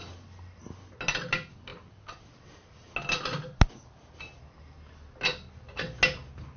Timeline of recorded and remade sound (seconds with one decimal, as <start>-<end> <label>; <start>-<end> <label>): 0.0-0.7 remade; 0.7-6.6 recorded